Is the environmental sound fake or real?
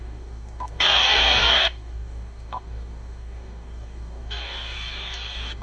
fake